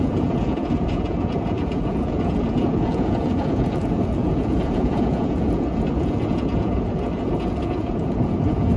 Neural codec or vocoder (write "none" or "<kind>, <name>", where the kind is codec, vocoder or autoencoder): vocoder, Vocos